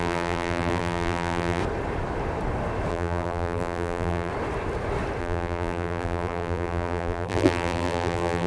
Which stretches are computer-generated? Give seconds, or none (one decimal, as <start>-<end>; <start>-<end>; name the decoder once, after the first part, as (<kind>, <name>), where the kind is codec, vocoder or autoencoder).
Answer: 0.0-1.6 (vocoder, BigVGAN v2); 2.9-4.3; 5.2-8.5